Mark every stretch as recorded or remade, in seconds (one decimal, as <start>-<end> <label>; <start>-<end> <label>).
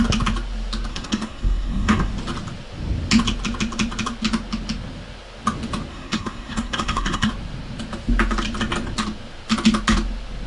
0.0-0.9 recorded; 0.9-2.1 remade; 2.1-5.9 recorded; 5.9-7.3 remade; 7.3-10.5 recorded